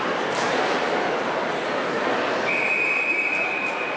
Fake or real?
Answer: fake